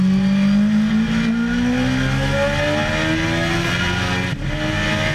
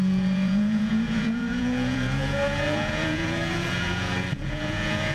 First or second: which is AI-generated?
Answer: second